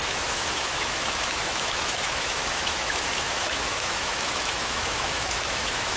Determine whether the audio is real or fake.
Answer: fake